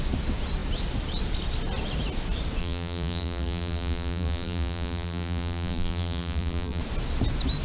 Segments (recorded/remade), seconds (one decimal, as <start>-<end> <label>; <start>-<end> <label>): 0.0-2.6 recorded; 2.6-6.8 remade; 6.8-7.6 recorded